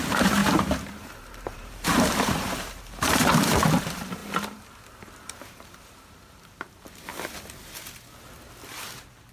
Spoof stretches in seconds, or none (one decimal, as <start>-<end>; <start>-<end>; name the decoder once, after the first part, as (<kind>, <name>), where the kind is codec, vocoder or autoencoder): 0.0-7.1 (vocoder, BigVGAN v2); 8.7-9.3